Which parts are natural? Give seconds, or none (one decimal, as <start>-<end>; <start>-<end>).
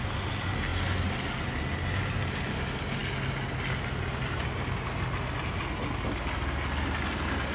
0.0-7.5